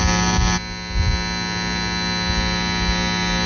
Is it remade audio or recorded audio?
recorded